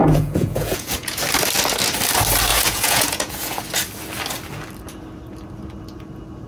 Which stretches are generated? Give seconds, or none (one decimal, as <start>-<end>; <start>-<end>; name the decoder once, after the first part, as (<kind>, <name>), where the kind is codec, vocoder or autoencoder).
0.0-1.2 (vocoder, Vocos); 2.5-3.6